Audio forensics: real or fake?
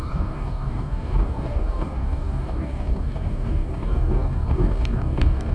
fake